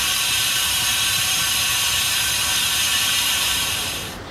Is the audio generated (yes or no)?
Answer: yes